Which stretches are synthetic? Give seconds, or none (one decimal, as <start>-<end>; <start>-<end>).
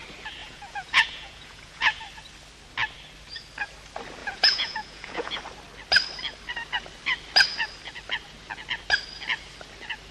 0.4-2.0; 4.2-5.4